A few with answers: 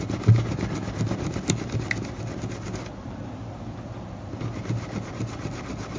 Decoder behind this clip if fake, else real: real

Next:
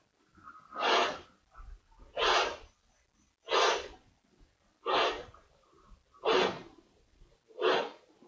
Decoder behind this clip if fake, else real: real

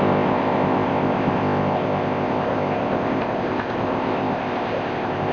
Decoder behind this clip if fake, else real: fake, codec, ZipCodec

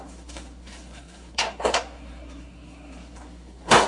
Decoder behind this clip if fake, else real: fake, codec, SNAC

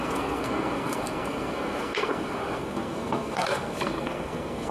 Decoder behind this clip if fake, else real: fake, codec, SNAC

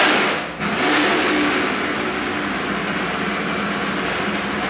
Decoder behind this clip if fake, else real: real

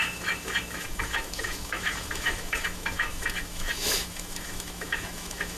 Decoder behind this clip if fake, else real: fake, autoencoder, DAC-VAE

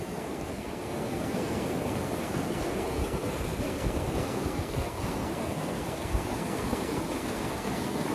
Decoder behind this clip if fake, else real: fake, codec, SNAC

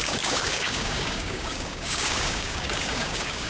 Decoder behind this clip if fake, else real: fake, codec, DAC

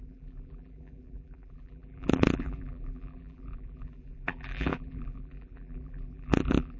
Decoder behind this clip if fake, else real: fake, vocoder, BigVGAN v2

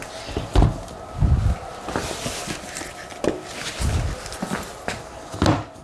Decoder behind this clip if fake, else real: real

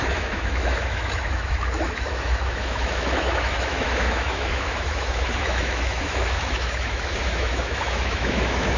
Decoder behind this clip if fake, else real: fake, autoencoder, DAC-VAE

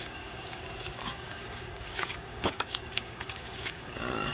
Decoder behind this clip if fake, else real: fake, codec, DAC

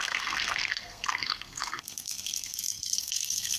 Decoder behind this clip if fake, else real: fake, codec, SNAC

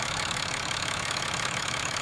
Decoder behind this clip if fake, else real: fake, autoencoder, DAC-VAE